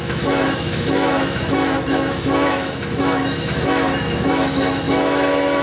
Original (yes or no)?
no